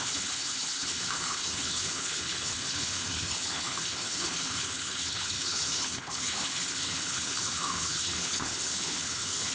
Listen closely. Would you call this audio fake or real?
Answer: fake